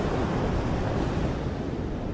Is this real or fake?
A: real